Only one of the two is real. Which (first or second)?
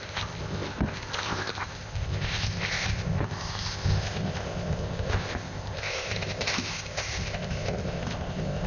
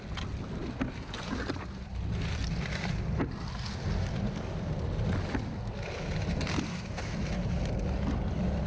second